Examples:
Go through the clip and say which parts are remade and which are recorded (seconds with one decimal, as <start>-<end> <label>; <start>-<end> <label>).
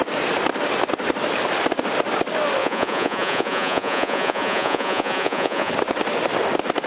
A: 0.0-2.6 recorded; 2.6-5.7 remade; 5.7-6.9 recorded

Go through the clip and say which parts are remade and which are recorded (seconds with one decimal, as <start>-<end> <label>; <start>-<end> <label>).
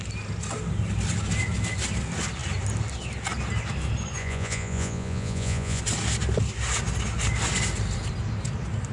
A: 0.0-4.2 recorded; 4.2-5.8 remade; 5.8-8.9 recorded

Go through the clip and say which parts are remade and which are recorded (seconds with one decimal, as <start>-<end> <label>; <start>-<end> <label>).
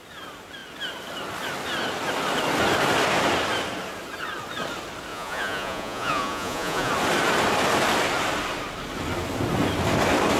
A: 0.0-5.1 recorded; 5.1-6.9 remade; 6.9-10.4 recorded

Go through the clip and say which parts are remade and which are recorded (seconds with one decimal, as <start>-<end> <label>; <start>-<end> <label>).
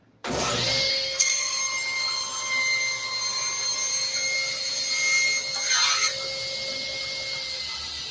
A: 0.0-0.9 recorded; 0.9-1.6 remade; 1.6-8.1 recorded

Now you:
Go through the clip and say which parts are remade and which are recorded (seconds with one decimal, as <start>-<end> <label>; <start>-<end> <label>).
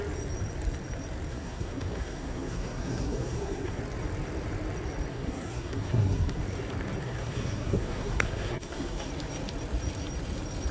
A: 0.0-1.3 recorded; 1.3-3.8 remade; 3.8-5.1 recorded; 5.1-6.4 remade; 6.4-7.0 recorded; 7.0-9.1 remade; 9.1-10.7 recorded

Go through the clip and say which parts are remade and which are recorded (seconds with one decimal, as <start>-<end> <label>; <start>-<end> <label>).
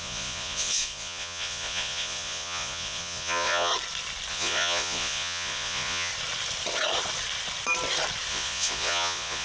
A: 0.0-3.7 remade; 3.7-4.3 recorded; 4.3-6.1 remade; 6.1-8.3 recorded; 8.3-9.4 remade